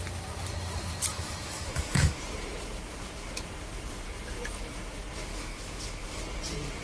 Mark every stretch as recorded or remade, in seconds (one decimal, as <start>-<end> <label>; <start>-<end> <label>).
0.0-1.1 recorded; 1.1-2.2 remade; 2.2-5.3 recorded; 5.3-6.2 remade; 6.2-6.8 recorded